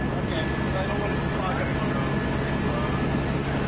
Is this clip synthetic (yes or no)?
no